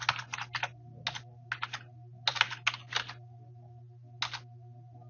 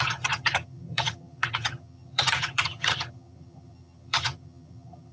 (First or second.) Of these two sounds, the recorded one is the first